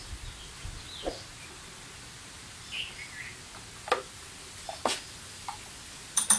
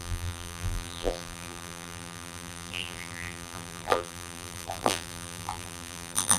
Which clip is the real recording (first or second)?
first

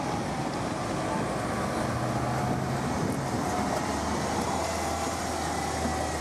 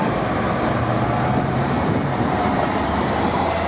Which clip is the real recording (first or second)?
first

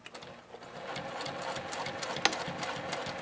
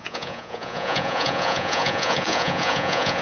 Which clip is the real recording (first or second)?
first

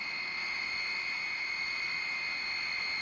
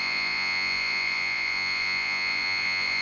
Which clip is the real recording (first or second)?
first